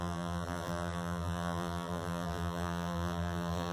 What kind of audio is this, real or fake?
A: fake